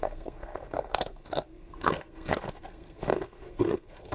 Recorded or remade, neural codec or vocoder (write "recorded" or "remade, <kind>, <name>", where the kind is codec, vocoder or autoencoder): remade, codec, SNAC